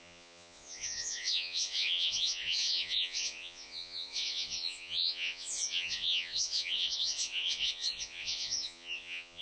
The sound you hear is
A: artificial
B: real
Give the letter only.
A